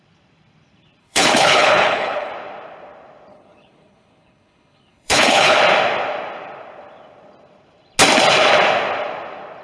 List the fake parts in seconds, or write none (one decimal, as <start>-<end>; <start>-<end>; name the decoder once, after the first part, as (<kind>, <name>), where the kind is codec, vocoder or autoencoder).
1.0-2.3 (codec, HILCodec); 3.3-5.6